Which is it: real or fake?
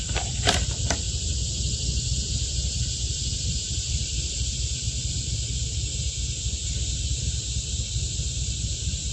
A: real